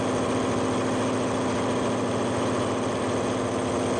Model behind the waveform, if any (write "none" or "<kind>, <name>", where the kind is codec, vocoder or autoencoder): none